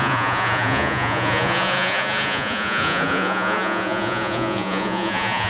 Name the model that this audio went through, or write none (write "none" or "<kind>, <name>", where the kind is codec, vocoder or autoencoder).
vocoder, Vocos